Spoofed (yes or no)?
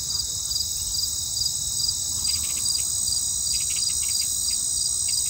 no